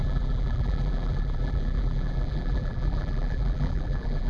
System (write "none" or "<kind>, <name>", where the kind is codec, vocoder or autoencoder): vocoder, BigVGAN v2